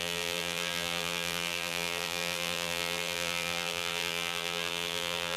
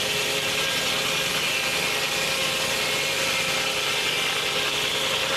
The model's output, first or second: first